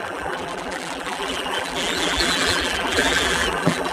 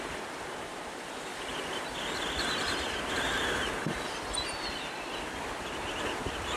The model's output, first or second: first